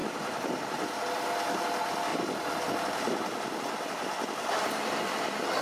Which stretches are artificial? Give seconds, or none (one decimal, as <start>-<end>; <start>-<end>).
0.0-1.0; 2.1-5.6